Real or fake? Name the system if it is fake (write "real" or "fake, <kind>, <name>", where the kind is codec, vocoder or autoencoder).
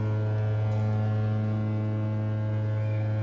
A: real